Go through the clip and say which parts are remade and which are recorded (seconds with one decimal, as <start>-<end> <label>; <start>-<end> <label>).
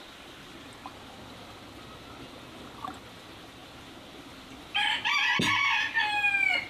0.0-6.7 recorded